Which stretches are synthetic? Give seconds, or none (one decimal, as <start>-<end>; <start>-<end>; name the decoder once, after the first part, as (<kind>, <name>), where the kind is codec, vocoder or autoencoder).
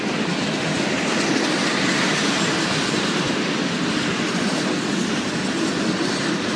1.6-4.7 (vocoder, BigVGAN v2)